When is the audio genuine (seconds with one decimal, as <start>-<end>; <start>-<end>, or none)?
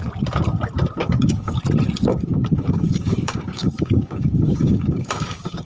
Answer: 0.0-1.0; 1.6-2.1